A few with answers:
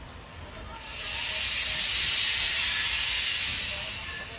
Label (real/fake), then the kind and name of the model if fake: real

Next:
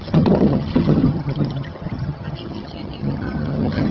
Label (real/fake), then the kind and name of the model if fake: fake, vocoder, HiFi-GAN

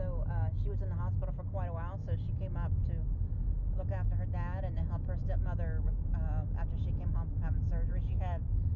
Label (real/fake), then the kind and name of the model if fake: real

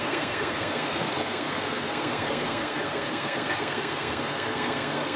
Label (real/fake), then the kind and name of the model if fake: fake, codec, SNAC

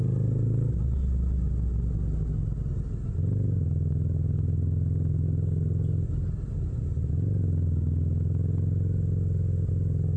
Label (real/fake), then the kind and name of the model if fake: real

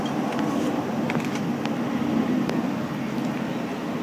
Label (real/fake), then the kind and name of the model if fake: real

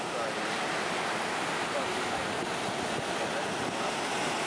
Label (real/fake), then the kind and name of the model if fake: real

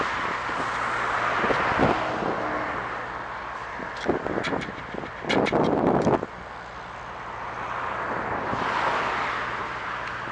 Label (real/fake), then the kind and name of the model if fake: real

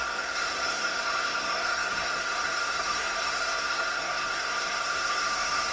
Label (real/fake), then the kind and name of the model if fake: fake, codec, SNAC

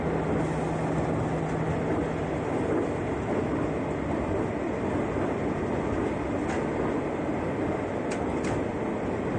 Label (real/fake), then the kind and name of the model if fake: real